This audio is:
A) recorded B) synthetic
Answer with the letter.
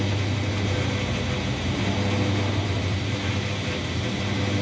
A